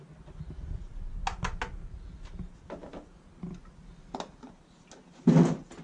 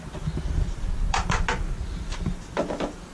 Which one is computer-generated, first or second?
second